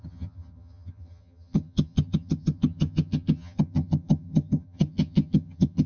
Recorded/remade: remade